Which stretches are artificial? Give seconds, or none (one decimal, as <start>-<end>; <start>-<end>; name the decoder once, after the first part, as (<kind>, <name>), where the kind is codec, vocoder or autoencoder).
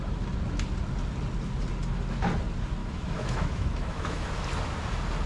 2.8-4.3 (autoencoder, DAC-VAE)